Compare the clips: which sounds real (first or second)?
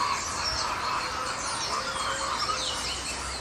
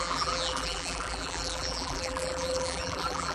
first